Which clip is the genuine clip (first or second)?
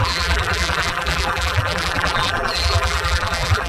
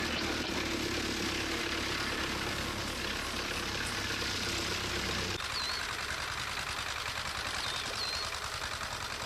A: second